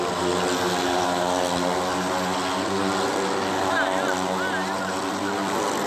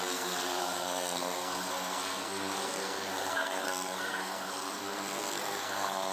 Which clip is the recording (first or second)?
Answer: first